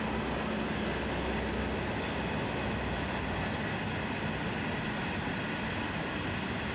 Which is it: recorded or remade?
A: recorded